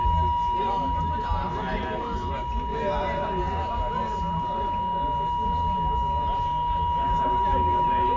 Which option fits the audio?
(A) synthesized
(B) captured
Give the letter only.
B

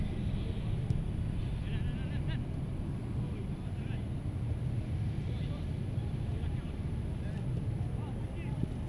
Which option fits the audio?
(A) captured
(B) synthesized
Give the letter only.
A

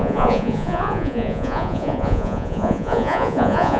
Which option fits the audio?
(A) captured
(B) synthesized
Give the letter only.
B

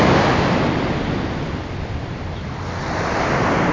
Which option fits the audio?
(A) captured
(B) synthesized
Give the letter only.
A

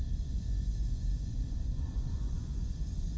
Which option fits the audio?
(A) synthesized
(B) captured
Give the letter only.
A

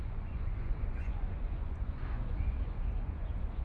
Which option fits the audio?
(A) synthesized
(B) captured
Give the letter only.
A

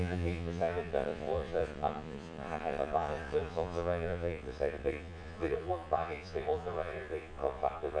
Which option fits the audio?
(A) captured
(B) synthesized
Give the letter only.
B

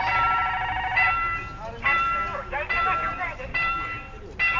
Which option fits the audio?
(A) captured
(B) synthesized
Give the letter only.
A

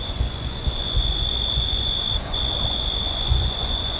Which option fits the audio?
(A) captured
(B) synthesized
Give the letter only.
B